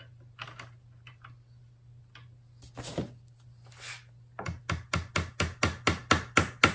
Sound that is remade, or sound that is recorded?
recorded